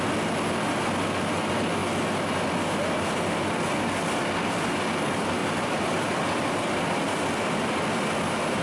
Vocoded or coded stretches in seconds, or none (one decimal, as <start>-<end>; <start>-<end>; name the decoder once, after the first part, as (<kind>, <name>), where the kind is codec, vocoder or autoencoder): 5.4-6.1 (vocoder, BigVGAN v2)